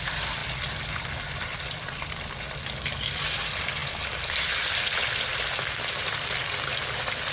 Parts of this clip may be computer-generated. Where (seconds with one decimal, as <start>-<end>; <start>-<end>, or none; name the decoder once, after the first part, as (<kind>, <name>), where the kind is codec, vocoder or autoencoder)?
none